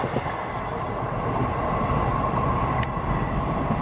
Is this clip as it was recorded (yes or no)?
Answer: yes